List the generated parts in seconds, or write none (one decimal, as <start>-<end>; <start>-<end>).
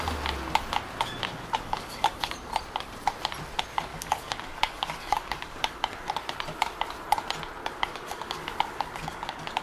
1.3-2.5; 3.9-6.1; 7.6-9.6